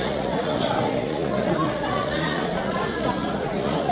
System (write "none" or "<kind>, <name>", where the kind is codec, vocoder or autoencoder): vocoder, Vocos